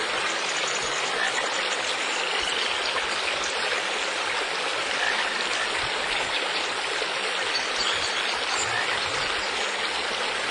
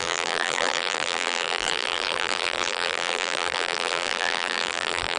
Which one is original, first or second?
first